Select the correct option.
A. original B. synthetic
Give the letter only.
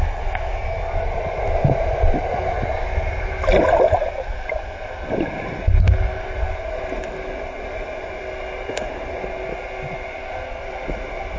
A